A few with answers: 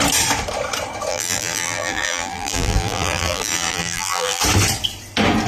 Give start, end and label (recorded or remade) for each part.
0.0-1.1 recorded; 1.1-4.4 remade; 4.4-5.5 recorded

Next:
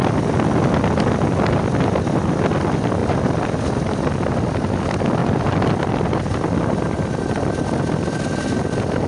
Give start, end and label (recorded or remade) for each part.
0.0-3.0 recorded; 3.0-4.3 remade; 4.3-5.2 recorded; 5.2-7.6 remade; 7.6-9.1 recorded

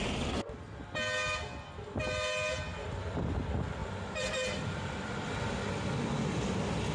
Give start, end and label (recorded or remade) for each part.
0.0-2.7 recorded; 2.7-3.2 remade; 3.2-3.8 recorded; 3.8-5.3 remade; 5.3-6.9 recorded

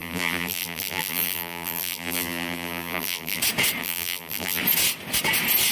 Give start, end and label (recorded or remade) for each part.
0.0-3.4 remade; 3.4-3.8 recorded; 3.8-4.6 remade; 4.6-5.7 recorded

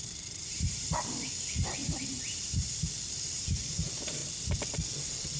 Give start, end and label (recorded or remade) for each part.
0.0-4.2 remade; 4.2-5.4 recorded

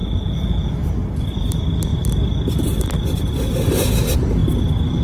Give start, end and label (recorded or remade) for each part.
0.0-5.0 recorded

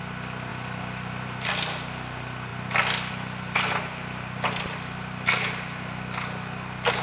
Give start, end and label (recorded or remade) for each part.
0.0-0.5 recorded; 0.5-1.5 remade; 1.5-7.0 recorded

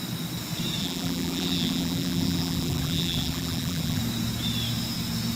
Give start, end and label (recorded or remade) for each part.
0.0-0.8 recorded; 0.8-4.0 remade; 4.0-5.4 recorded